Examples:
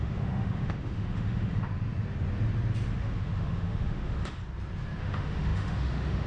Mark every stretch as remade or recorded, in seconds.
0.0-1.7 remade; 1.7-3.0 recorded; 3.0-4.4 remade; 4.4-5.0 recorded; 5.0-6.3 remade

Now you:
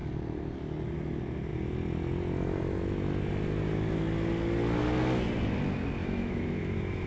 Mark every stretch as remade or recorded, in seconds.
0.0-6.0 recorded; 6.0-7.1 remade